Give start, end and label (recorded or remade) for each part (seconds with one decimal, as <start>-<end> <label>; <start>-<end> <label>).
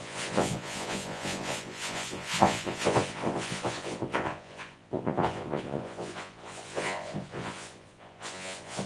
0.0-8.9 remade